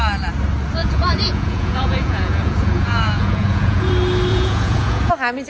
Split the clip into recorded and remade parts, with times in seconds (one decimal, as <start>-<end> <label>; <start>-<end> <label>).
0.0-0.8 recorded; 0.8-3.9 remade; 3.9-4.3 recorded; 4.3-5.1 remade; 5.1-5.5 recorded